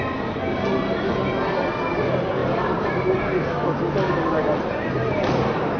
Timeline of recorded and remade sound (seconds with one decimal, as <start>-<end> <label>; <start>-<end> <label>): 0.0-2.4 recorded; 2.4-2.9 remade; 2.9-4.5 recorded; 4.5-5.8 remade